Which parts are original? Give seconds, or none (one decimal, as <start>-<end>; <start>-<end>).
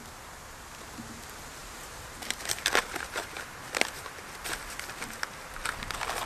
0.0-1.6; 3.5-6.3